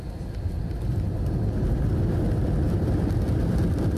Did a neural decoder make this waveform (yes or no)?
no